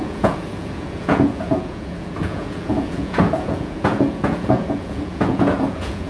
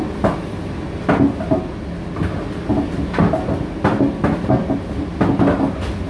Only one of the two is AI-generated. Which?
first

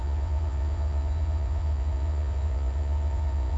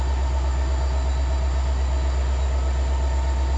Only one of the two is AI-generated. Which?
first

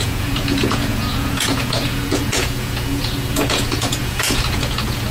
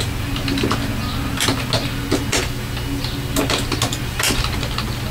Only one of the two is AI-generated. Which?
first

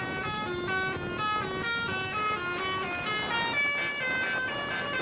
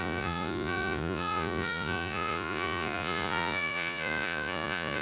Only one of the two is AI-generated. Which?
second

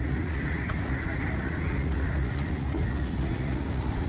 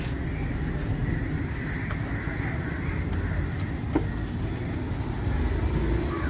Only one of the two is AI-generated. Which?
first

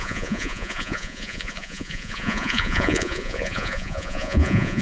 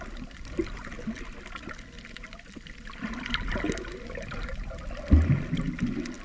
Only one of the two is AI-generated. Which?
first